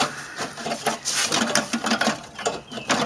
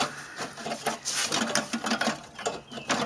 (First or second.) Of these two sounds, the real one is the second